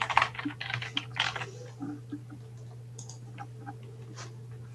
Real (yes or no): yes